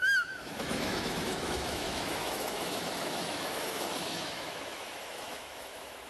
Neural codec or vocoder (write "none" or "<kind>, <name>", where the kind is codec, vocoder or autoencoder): autoencoder, DAC-VAE